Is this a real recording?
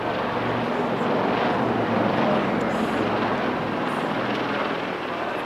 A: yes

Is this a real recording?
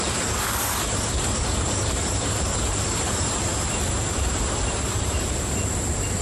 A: no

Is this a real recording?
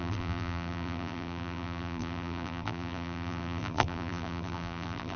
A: no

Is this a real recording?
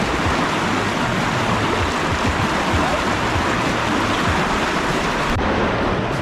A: yes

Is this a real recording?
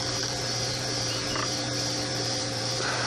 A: no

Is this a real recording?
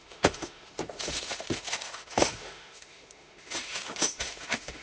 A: no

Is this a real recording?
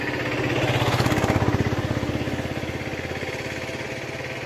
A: yes